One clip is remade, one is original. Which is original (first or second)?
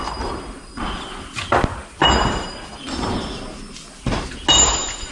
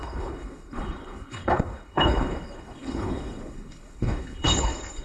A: first